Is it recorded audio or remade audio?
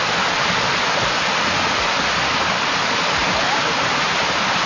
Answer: recorded